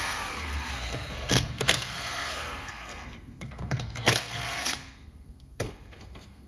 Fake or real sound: fake